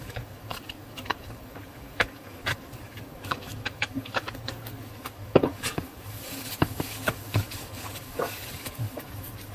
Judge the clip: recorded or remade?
remade